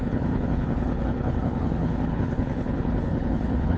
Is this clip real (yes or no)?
no